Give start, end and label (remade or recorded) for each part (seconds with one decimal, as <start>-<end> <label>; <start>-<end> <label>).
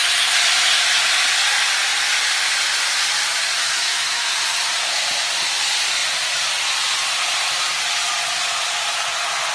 0.0-3.6 recorded; 3.6-4.3 remade; 4.3-9.5 recorded